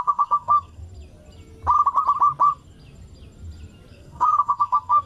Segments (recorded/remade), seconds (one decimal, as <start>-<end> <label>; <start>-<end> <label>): 0.0-0.8 remade; 0.8-3.9 recorded; 3.9-5.1 remade